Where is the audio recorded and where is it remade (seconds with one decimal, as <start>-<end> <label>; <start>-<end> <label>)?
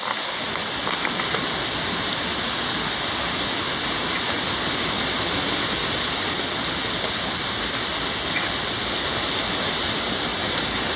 0.0-10.3 recorded; 10.3-11.0 remade